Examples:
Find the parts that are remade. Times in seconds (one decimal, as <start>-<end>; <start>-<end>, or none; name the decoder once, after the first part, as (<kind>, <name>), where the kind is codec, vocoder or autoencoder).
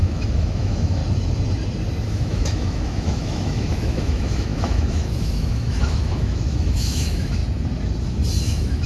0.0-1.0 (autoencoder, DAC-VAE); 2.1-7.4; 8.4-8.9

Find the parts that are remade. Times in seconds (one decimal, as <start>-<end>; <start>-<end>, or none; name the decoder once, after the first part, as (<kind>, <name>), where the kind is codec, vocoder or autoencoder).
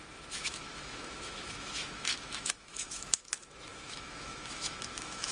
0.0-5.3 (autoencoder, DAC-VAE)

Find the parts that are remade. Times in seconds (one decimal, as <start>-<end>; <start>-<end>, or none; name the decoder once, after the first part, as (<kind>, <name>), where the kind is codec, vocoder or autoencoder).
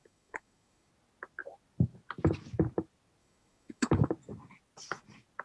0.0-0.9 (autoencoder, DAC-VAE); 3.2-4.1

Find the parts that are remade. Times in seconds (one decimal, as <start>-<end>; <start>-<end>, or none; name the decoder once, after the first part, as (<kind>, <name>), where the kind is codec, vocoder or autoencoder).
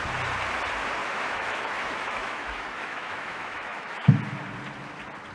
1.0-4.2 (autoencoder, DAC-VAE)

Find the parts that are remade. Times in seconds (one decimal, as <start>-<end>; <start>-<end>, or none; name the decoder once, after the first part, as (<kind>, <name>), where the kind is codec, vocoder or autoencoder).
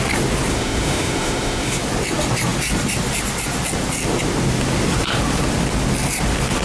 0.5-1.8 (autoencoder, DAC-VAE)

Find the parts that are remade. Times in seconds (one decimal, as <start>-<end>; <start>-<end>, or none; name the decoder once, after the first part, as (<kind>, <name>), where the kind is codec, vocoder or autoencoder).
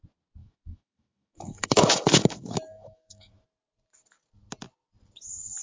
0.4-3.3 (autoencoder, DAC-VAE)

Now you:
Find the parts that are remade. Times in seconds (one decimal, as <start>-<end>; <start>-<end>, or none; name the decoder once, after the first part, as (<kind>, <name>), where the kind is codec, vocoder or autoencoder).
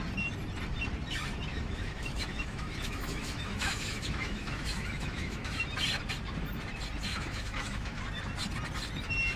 1.5-5.6 (autoencoder, DAC-VAE); 7.1-8.0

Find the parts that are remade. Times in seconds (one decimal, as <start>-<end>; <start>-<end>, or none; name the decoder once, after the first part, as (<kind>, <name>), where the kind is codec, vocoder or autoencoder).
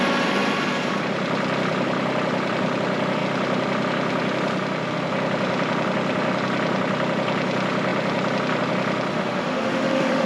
9.1-10.3 (autoencoder, DAC-VAE)